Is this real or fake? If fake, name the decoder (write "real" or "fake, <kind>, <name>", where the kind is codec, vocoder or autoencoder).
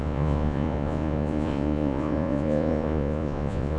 fake, vocoder, Vocos